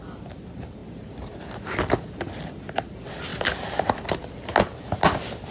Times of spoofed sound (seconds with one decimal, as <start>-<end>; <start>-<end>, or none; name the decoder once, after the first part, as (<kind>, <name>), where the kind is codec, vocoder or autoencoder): none